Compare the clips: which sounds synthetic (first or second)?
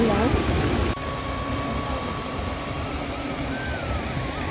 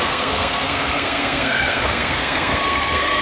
second